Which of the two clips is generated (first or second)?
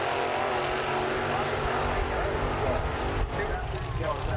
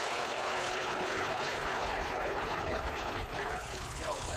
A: second